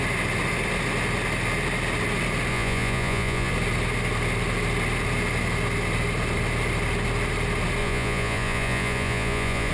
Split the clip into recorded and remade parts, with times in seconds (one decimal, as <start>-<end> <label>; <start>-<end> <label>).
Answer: 0.0-2.5 recorded; 2.5-3.5 remade; 3.5-7.8 recorded; 7.8-9.7 remade